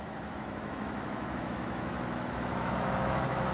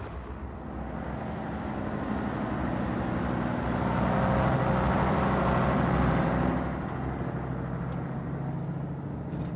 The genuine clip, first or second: second